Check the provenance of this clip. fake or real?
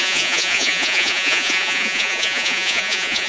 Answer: fake